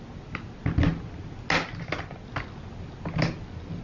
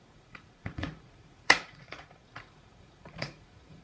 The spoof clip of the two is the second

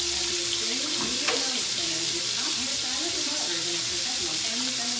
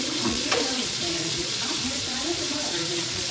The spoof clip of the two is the second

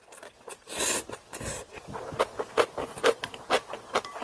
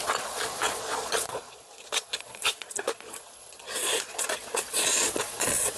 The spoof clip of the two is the second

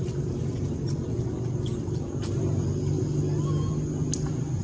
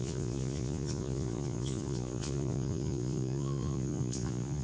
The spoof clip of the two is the second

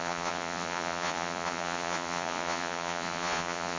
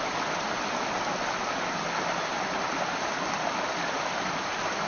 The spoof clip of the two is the first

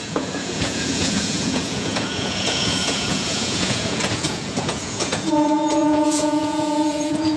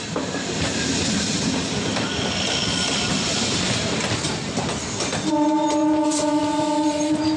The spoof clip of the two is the first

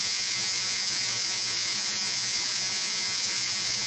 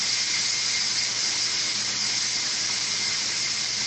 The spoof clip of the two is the first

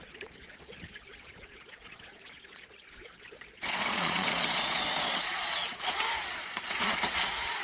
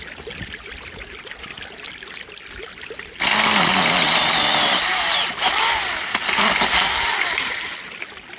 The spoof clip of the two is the first